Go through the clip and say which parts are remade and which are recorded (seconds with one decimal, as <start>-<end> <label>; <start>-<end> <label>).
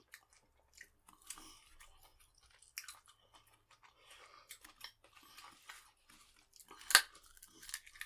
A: 0.0-8.1 recorded